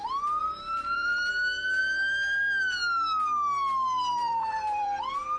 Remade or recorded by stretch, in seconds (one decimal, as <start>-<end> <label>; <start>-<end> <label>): 0.0-0.4 recorded; 0.4-1.3 remade; 1.3-4.1 recorded; 4.1-5.0 remade; 5.0-5.4 recorded